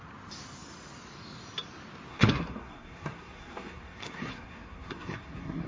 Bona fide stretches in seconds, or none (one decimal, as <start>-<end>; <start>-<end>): 0.0-2.1